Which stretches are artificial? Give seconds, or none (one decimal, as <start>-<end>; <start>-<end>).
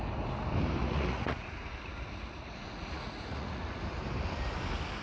0.8-3.8